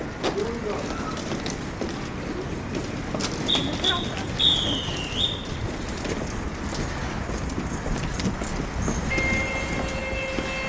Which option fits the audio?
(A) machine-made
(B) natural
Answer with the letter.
B